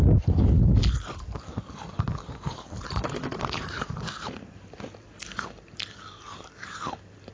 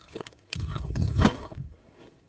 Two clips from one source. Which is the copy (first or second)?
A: second